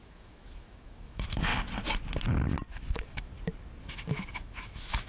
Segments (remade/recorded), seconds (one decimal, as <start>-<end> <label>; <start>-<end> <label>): 0.0-1.5 remade; 1.5-2.7 recorded; 2.7-3.3 remade; 3.3-3.8 recorded; 3.8-5.1 remade